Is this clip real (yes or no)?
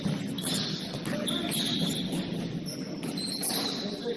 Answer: yes